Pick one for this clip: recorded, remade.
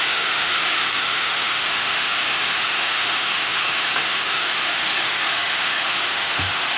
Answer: remade